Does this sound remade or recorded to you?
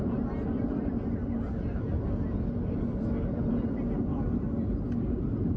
recorded